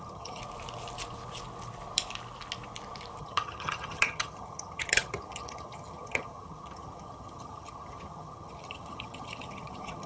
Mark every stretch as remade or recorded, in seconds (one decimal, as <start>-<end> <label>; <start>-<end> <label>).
0.0-0.4 remade; 0.4-3.2 recorded; 3.2-10.1 remade